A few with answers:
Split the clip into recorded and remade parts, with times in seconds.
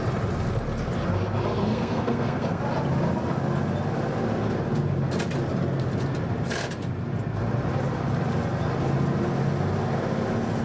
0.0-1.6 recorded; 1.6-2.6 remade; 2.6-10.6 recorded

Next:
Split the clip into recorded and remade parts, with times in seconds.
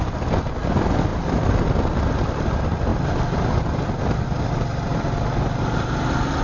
0.0-6.4 recorded